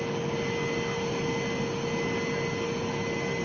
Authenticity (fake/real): real